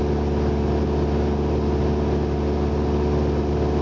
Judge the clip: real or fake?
real